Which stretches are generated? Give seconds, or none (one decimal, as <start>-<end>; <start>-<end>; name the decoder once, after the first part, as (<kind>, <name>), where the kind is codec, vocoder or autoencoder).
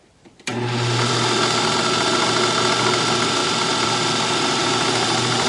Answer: 0.5-1.1 (vocoder, BigVGAN v2); 3.4-4.0